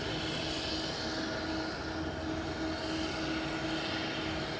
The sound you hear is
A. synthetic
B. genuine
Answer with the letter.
B